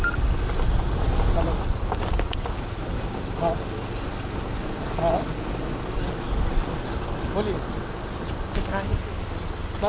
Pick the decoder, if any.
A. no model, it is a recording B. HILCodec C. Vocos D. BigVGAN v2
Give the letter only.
A